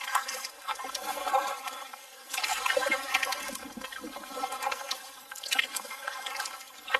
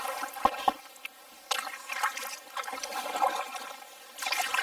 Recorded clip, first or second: second